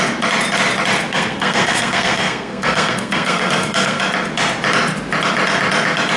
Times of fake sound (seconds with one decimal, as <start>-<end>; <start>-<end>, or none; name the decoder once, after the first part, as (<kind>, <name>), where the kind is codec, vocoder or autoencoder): 1.1-4.0 (codec, SNAC)